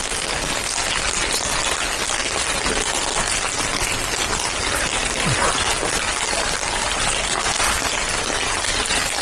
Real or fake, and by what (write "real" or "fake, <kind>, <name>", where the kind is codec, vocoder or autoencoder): real